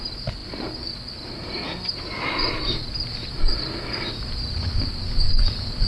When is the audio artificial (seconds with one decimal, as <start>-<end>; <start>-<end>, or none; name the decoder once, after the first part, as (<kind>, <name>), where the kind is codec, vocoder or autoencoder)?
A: none